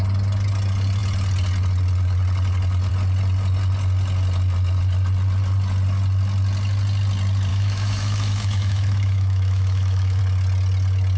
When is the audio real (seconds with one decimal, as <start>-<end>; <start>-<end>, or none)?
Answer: 0.0-7.5; 10.2-11.2